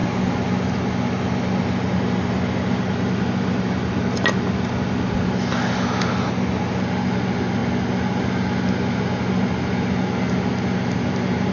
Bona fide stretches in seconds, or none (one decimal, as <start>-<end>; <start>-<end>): 0.0-11.5